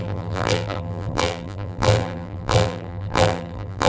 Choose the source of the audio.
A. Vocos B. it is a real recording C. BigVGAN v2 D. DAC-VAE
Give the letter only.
C